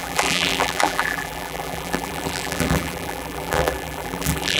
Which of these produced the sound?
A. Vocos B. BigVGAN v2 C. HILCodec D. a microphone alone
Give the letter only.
B